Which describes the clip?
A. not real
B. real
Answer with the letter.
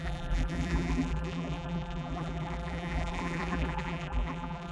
A